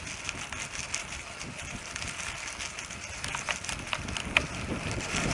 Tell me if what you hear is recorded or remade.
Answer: recorded